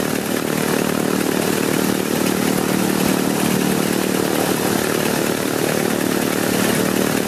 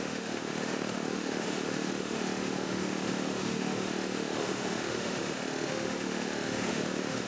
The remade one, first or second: second